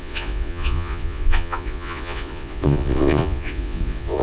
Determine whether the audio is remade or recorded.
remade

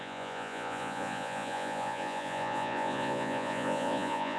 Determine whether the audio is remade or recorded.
remade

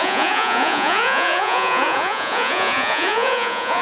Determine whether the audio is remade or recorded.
remade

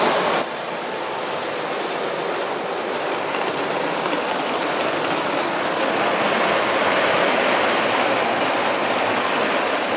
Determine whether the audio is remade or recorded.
recorded